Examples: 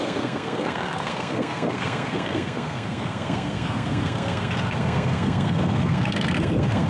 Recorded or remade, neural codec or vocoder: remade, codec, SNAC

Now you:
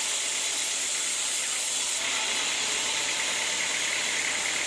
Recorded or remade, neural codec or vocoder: remade, vocoder, BigVGAN v2